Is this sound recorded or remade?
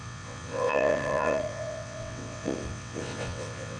remade